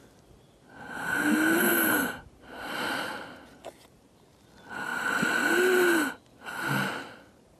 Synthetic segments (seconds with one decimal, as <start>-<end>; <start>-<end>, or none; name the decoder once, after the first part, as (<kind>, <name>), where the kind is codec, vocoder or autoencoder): none